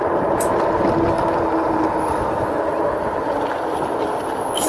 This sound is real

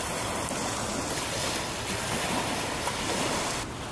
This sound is real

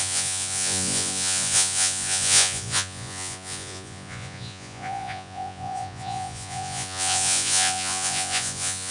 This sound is fake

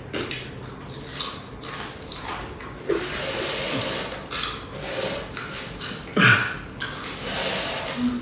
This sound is real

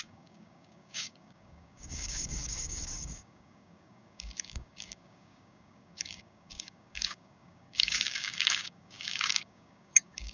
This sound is fake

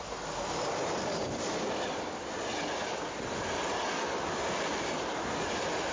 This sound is real